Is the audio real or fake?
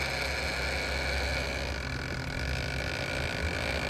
real